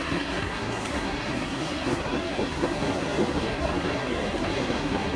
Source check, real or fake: fake